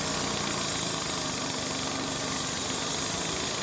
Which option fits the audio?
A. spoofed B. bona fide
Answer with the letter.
B